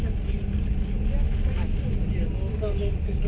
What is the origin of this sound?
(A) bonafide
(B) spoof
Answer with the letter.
A